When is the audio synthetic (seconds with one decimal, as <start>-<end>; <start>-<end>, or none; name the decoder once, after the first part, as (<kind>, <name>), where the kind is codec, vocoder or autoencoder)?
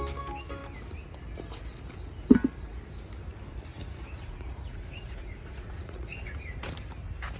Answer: 3.7-6.6 (vocoder, Vocos)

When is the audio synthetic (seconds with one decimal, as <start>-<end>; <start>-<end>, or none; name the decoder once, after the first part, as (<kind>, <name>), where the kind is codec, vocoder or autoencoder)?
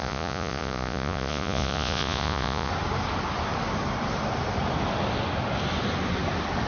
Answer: 0.0-2.7 (vocoder, Vocos)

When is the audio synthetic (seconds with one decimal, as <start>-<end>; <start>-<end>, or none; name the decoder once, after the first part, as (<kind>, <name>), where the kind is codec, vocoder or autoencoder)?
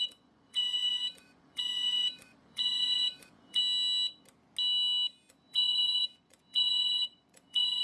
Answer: 0.0-3.6 (vocoder, Vocos); 5.3-7.8